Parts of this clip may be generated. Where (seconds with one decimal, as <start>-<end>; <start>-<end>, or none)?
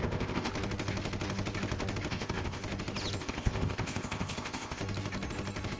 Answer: 0.0-0.5; 2.1-2.6; 3.2-4.8